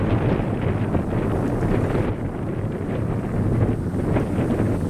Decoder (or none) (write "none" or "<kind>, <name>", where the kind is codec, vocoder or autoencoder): none